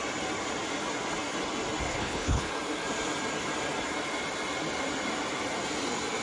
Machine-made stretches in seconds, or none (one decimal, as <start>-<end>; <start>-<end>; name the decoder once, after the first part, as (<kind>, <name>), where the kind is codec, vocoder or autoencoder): 1.9-2.5 (codec, HILCodec)